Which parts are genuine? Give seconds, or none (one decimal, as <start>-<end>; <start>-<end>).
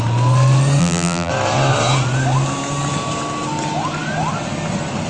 0.0-0.8; 1.3-5.1